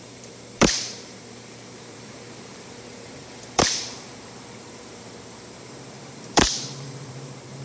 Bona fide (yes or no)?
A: no